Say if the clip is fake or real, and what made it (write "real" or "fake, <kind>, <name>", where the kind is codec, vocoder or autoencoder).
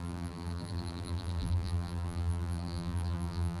fake, vocoder, BigVGAN v2